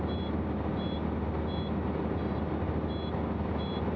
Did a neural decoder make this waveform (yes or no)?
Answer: no